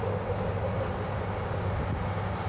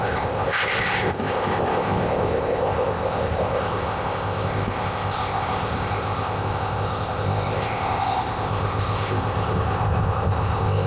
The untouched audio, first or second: first